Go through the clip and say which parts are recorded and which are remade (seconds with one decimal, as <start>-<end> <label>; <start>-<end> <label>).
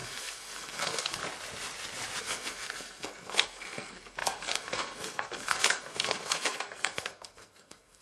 0.0-1.2 remade; 1.2-2.2 recorded; 2.2-8.0 remade